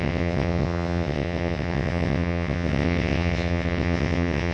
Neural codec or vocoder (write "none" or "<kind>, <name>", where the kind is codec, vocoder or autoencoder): vocoder, WaveNeXt